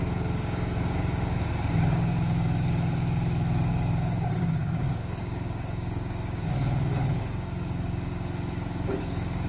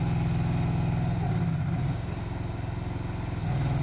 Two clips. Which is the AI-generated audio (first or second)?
first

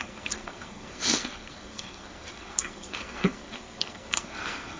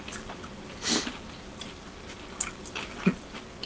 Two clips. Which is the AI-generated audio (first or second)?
first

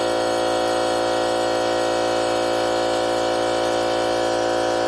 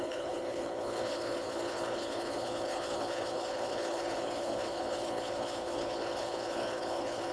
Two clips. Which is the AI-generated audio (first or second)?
second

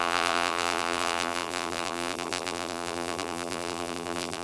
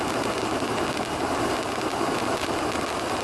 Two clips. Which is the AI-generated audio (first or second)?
first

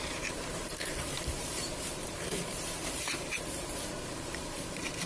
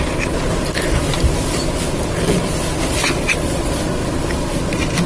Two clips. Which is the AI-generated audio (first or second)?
first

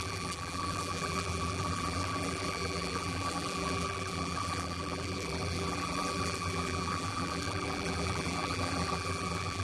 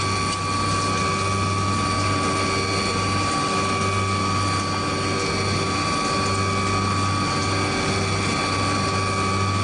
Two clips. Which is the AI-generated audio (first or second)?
first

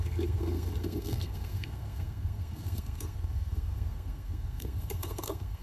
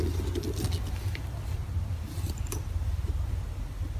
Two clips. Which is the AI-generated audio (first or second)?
first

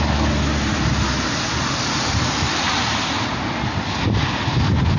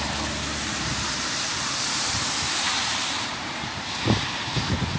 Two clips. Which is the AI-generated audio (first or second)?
second